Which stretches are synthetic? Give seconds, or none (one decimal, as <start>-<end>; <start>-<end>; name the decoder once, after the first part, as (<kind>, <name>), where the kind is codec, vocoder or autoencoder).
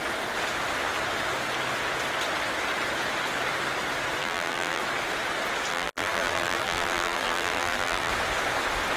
4.2-4.8 (vocoder, BigVGAN v2); 5.7-8.1